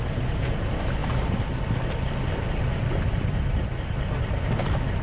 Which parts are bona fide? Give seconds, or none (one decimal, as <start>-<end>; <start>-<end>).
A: 0.0-5.0

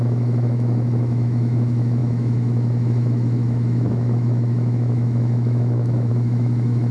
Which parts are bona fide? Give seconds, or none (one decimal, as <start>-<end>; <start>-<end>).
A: none

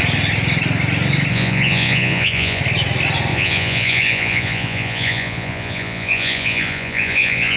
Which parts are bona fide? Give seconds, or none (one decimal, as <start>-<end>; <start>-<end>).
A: 0.0-1.3; 2.6-3.3

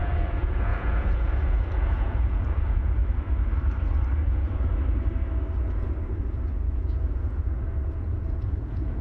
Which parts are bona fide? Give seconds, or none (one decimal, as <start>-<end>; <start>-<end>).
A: 3.0-4.3; 4.7-6.5

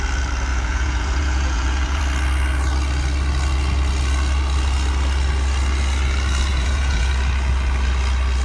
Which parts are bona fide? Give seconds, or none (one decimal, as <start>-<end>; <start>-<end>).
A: 0.0-0.5; 2.0-6.5; 7.1-8.4

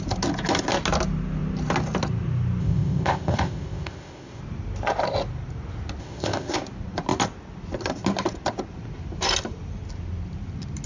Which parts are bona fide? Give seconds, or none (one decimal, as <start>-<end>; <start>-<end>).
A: 0.0-2.6; 4.4-6.0; 6.6-10.9

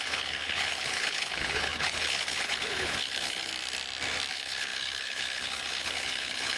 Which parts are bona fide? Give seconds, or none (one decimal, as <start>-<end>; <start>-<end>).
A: 3.5-4.3